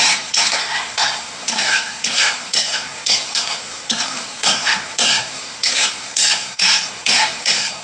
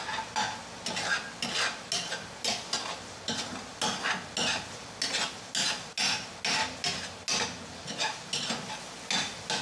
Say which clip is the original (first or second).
second